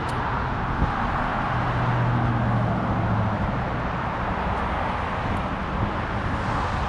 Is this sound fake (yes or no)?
no